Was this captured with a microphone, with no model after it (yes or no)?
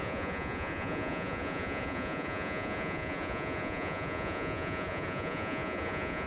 no